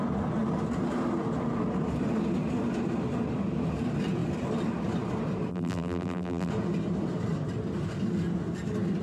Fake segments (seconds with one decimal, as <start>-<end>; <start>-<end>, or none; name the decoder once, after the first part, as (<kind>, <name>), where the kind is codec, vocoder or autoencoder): 5.5-6.5 (vocoder, BigVGAN v2)